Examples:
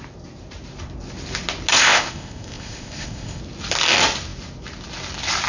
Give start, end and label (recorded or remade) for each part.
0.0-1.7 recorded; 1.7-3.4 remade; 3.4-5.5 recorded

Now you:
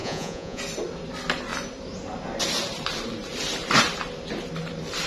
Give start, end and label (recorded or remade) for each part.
0.0-0.6 remade; 0.6-5.1 recorded

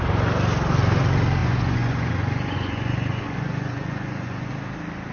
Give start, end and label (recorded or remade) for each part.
0.0-1.4 recorded; 1.4-4.5 remade; 4.5-5.1 recorded

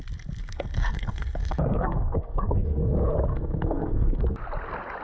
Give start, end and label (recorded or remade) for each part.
0.0-0.4 recorded; 0.4-2.9 remade; 2.9-3.3 recorded; 3.3-4.2 remade; 4.2-5.0 recorded

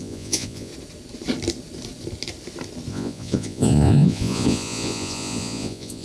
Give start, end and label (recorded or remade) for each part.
0.0-0.7 remade; 0.7-2.9 recorded; 2.9-6.0 remade